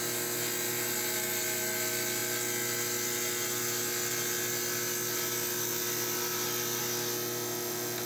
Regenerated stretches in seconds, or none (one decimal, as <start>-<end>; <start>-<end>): none